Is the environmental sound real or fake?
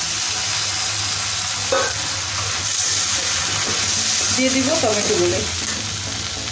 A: real